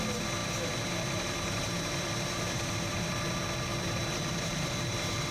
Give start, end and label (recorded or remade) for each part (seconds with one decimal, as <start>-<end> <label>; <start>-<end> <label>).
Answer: 0.0-0.4 recorded; 0.4-3.1 remade; 3.1-3.7 recorded; 3.7-5.3 remade